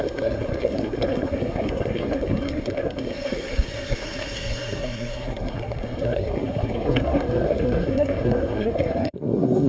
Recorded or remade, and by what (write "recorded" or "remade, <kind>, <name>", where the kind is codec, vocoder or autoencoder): remade, codec, SNAC